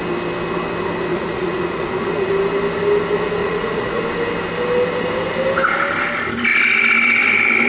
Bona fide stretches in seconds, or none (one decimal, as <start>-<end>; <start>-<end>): 0.0-1.1; 2.3-3.4; 4.0-7.7